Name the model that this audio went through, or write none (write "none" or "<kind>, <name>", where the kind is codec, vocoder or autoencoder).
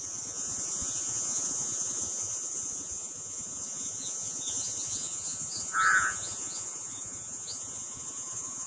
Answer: vocoder, Vocos